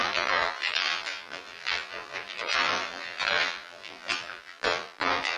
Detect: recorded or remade remade